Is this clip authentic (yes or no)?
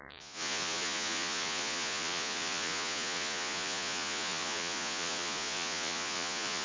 no